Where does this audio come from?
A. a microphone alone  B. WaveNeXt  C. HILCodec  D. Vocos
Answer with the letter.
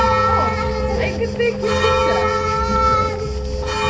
A